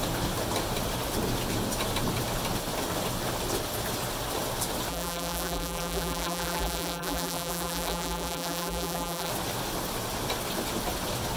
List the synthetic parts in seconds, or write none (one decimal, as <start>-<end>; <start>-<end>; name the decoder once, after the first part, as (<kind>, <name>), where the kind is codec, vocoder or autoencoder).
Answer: 4.9-9.3 (vocoder, BigVGAN v2)